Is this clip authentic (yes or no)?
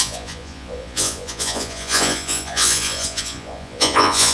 no